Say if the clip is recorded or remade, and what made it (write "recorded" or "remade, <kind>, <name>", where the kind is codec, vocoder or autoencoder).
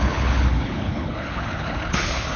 remade, codec, HILCodec